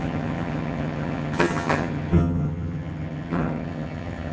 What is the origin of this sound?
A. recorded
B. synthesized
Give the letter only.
B